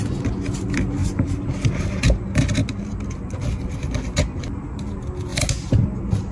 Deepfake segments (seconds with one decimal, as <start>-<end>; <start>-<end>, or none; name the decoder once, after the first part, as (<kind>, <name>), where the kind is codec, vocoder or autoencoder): 1.0-1.5 (vocoder, BigVGAN v2)